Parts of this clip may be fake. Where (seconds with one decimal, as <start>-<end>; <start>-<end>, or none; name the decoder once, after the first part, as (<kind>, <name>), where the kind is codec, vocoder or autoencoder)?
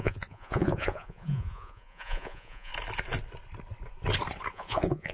0.0-2.7 (vocoder, Vocos); 4.5-5.1